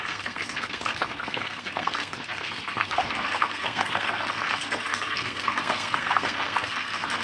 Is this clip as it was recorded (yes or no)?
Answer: no